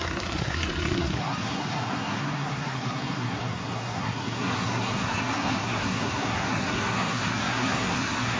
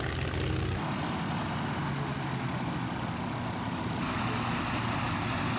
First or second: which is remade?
first